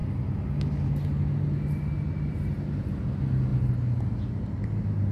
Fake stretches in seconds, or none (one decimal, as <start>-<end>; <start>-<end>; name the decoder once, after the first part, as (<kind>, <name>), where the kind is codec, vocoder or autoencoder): none